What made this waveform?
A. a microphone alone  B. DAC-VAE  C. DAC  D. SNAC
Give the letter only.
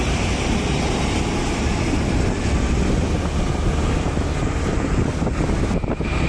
A